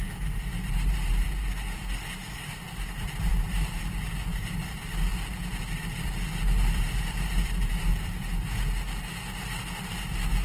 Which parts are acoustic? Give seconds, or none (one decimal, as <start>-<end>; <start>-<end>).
7.9-9.4